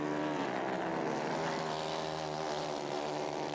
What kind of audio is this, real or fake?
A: real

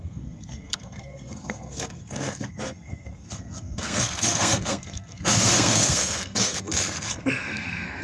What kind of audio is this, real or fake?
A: fake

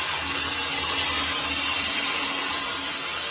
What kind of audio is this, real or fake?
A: real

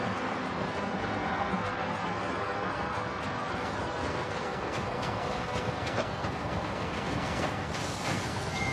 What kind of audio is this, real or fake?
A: fake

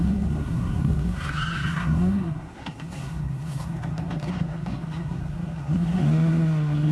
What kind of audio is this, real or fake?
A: fake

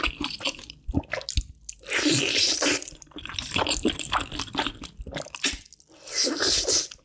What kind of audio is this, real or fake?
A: real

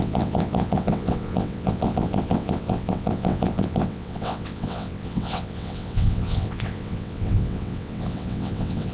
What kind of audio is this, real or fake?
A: fake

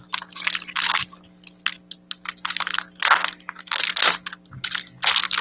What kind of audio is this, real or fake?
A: real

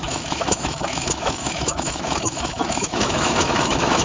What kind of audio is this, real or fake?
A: fake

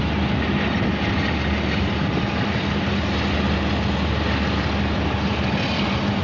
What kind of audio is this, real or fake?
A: real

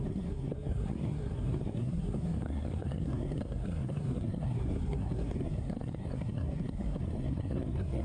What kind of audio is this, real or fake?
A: fake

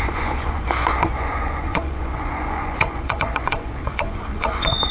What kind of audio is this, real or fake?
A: fake